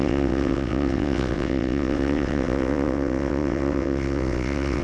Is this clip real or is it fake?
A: fake